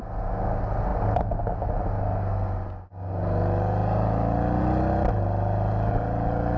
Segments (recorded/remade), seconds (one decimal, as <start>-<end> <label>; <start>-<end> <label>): 0.0-6.6 recorded